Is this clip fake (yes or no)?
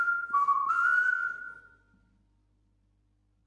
no